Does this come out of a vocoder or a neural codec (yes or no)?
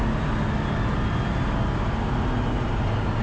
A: no